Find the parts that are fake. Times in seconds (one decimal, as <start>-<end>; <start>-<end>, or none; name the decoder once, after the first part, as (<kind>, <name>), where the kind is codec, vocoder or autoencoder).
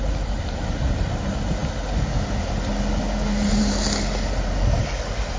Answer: none